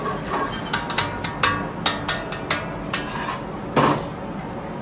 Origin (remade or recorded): recorded